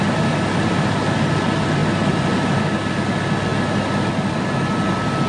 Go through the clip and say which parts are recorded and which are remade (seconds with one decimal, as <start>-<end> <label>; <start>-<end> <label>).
0.0-5.3 recorded